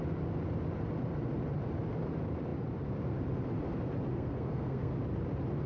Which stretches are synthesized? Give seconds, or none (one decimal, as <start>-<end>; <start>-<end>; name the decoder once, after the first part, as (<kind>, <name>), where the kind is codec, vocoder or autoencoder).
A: 4.1-4.9 (codec, SNAC)